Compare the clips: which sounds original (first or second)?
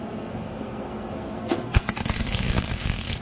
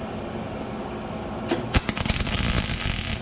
second